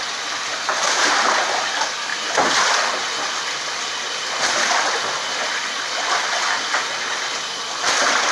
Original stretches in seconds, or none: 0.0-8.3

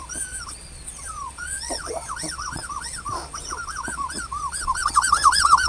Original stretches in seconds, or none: none

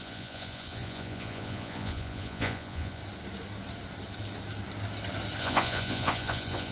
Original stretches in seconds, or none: 3.0-5.4